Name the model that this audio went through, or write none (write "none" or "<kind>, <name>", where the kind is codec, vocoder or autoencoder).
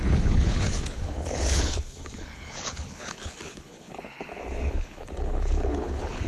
codec, HILCodec